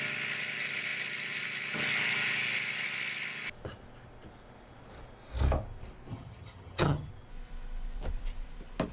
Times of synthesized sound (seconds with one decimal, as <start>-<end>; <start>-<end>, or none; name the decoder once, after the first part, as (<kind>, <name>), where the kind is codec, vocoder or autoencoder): 6.1-7.1 (vocoder, HiFi-GAN)